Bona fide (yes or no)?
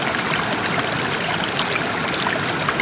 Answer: yes